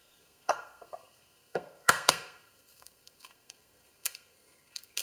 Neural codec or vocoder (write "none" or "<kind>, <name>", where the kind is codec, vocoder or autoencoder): codec, SNAC